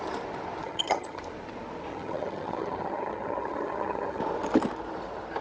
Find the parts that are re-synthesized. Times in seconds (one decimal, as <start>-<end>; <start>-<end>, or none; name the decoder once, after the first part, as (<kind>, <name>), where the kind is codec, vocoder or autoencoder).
0.6-1.2 (vocoder, HiFi-GAN); 1.9-4.2